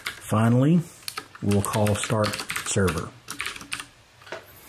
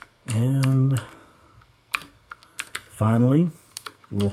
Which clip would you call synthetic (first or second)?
second